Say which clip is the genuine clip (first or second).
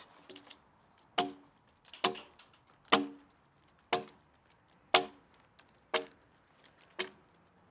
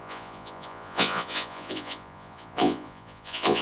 first